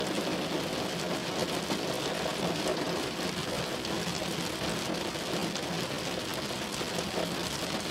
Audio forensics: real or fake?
real